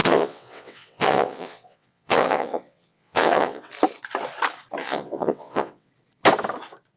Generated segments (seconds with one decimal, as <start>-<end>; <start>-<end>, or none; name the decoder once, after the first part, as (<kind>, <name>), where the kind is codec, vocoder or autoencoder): 0.0-3.7 (vocoder, WaveNeXt); 4.8-5.9